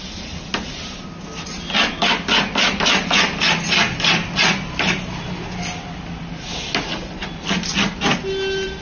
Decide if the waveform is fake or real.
real